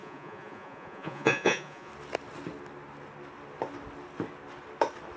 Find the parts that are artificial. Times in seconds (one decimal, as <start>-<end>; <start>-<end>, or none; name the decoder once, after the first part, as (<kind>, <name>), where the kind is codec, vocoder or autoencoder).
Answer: 0.0-1.9 (vocoder, Vocos)